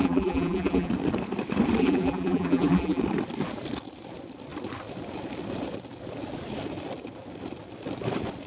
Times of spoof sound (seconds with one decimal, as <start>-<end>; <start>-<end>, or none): 0.0-0.9; 1.8-3.0